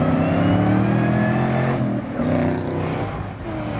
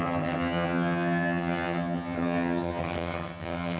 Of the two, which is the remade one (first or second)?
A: second